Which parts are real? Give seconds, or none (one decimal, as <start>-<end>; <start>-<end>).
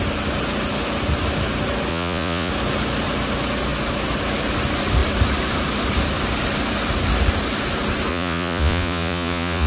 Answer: 0.0-1.9; 2.5-8.1